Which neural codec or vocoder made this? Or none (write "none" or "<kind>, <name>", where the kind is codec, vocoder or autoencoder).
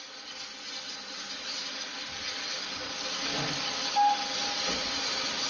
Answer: none